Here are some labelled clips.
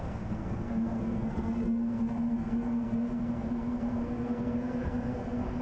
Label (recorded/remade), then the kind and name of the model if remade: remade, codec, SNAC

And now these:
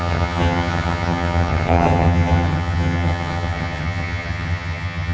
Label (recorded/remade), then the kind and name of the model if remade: remade, vocoder, HiFi-GAN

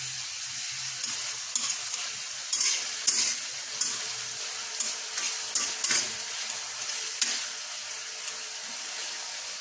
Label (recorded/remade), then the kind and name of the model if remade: recorded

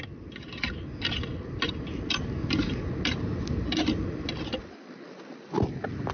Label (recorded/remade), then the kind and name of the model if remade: recorded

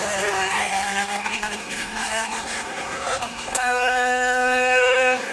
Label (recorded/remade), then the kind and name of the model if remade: remade, codec, SNAC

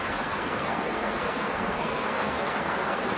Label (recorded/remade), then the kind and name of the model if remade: remade, codec, SNAC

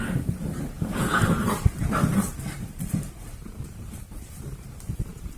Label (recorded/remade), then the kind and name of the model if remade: remade, vocoder, BigVGAN v2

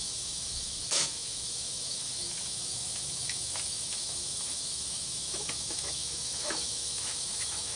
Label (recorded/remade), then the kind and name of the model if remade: remade, autoencoder, DAC-VAE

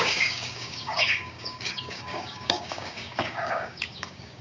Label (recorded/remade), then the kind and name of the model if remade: remade, codec, DAC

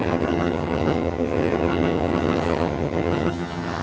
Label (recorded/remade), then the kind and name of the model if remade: remade, vocoder, HiFi-GAN